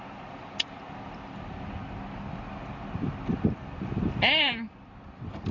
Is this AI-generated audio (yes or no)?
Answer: no